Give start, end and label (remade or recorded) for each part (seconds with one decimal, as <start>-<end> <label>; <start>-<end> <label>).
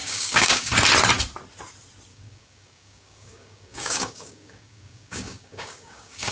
0.0-0.7 remade; 0.7-2.1 recorded; 2.1-6.3 remade